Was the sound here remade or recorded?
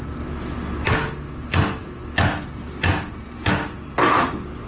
recorded